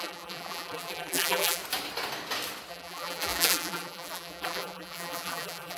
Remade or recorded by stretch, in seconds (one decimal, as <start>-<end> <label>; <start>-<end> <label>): 0.0-1.6 remade; 1.6-2.7 recorded; 2.7-5.8 remade